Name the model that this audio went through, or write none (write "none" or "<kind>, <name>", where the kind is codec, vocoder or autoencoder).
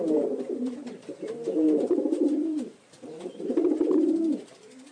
vocoder, BigVGAN v2